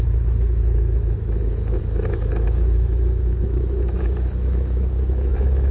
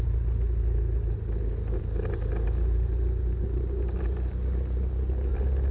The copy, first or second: first